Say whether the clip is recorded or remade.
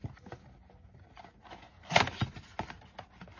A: recorded